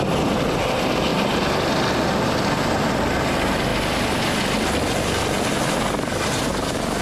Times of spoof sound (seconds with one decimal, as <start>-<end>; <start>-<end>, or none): none